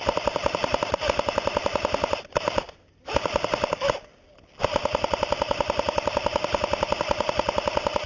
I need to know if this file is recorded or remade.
recorded